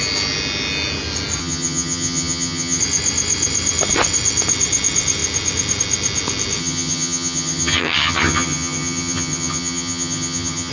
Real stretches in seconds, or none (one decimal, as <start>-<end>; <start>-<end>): 0.0-1.4; 2.8-6.6